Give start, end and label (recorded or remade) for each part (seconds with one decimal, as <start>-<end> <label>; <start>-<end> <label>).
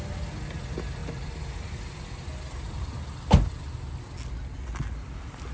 0.0-5.5 recorded